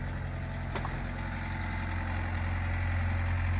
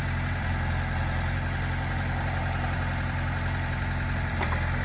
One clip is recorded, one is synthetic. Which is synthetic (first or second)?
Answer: second